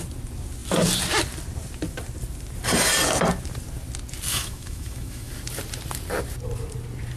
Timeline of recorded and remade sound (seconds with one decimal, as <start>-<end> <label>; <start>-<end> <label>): 0.0-4.3 recorded; 4.3-5.3 remade; 5.3-7.2 recorded